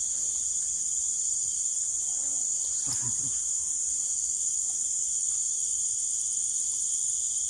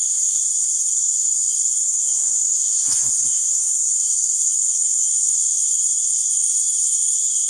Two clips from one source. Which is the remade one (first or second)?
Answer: second